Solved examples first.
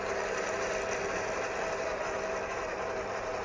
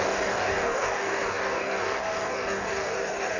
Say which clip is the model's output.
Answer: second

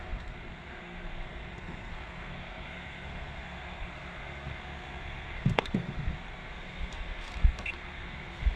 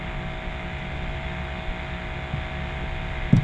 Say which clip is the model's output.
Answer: first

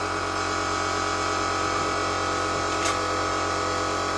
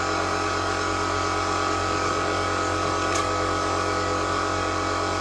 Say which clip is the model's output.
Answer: second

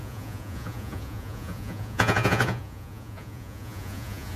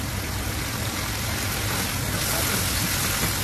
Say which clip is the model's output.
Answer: first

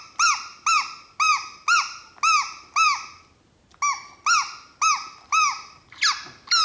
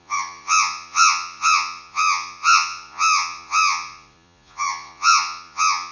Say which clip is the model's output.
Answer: second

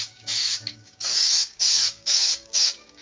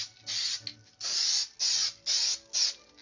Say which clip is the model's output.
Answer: first